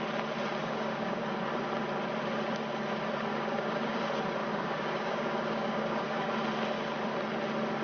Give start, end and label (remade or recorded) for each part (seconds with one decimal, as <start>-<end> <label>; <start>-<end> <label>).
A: 0.0-0.6 recorded; 0.6-1.2 remade; 1.2-3.3 recorded; 3.3-4.0 remade; 4.0-4.4 recorded; 4.4-6.3 remade; 6.3-7.8 recorded